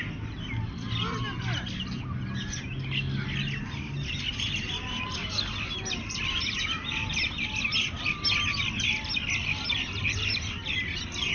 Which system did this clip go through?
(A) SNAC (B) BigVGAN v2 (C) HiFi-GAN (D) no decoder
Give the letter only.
D